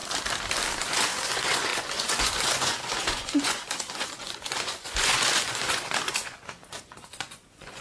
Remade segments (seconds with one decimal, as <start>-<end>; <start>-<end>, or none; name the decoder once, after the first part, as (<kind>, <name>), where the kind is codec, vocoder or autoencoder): 0.8-7.8 (vocoder, Vocos)